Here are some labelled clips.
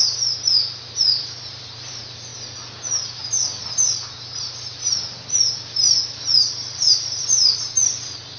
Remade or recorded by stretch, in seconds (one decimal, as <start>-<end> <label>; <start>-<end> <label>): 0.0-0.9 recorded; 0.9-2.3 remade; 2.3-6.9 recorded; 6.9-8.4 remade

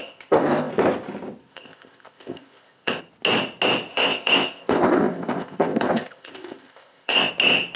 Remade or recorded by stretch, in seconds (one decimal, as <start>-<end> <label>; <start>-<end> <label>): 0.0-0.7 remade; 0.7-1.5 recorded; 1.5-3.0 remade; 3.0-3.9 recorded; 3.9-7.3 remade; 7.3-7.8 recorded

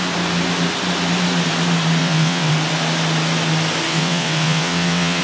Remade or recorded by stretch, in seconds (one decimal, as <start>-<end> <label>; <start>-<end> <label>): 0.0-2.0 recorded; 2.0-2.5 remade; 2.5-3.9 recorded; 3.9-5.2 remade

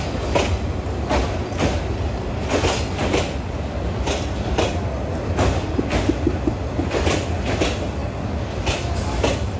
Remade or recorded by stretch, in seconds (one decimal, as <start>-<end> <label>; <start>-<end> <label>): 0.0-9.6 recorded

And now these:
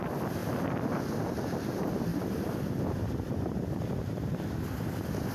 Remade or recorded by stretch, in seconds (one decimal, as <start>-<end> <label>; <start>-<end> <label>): 0.0-5.3 recorded

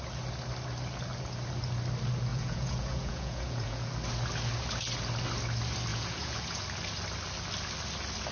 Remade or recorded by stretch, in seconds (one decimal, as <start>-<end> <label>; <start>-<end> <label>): 0.0-2.3 recorded; 2.3-3.9 remade; 3.9-5.9 recorded; 5.9-6.6 remade; 6.6-8.3 recorded

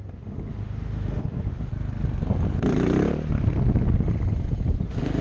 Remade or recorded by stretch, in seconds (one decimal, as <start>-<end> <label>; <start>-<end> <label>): 0.0-1.7 remade; 1.7-4.8 recorded; 4.8-5.2 remade

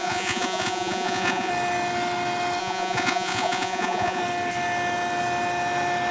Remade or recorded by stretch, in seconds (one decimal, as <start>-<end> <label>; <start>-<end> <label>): 0.0-1.5 remade; 1.5-2.6 recorded; 2.6-4.2 remade; 4.2-6.1 recorded